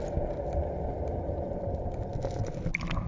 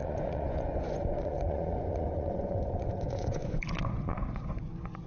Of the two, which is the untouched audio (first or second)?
first